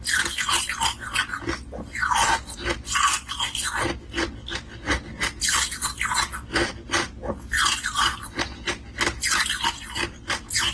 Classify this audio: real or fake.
real